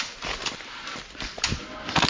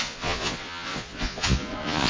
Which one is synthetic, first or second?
second